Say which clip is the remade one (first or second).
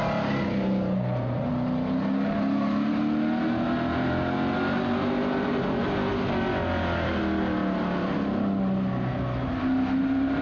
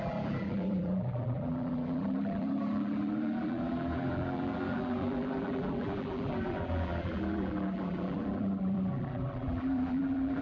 second